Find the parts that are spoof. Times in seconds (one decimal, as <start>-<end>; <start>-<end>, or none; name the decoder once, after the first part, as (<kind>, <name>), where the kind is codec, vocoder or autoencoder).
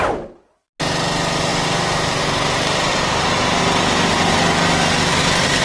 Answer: 1.5-3.6 (vocoder, BigVGAN v2)